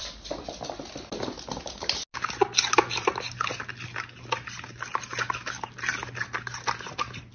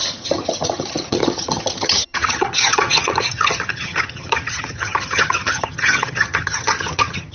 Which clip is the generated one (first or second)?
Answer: second